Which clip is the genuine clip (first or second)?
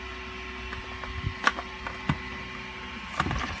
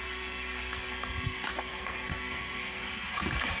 first